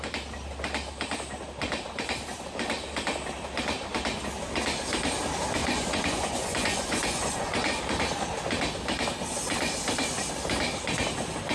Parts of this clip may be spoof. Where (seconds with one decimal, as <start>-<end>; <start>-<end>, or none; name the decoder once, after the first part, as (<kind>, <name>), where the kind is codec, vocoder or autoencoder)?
5.6-7.8 (vocoder, Vocos)